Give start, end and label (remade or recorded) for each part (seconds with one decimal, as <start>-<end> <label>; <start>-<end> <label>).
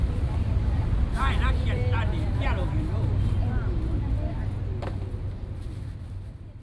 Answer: 0.0-1.8 remade; 1.8-5.5 recorded; 5.5-6.6 remade